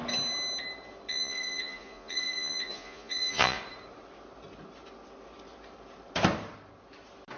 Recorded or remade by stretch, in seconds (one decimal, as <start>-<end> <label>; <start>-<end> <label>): 0.0-1.1 recorded; 1.1-3.6 remade; 3.6-7.4 recorded